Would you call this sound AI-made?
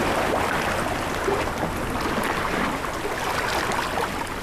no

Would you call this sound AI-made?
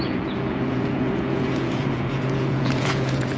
yes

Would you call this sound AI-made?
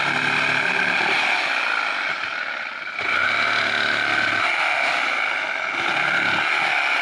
no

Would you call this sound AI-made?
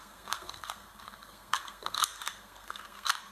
yes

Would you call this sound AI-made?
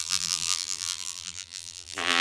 yes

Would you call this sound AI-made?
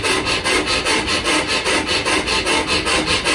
no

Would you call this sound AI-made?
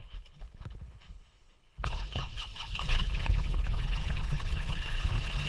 yes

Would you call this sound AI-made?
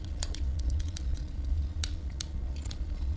yes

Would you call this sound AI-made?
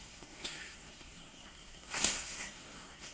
yes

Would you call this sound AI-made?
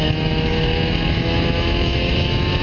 yes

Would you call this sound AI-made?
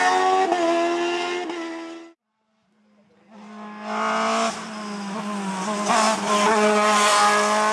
no